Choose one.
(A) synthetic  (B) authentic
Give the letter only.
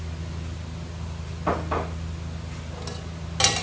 B